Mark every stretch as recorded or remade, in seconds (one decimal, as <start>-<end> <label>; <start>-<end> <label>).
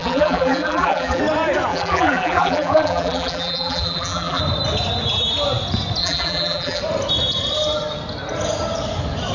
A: 0.0-1.2 remade; 1.2-1.7 recorded; 1.7-4.4 remade; 4.4-6.0 recorded; 6.0-6.8 remade; 6.8-9.3 recorded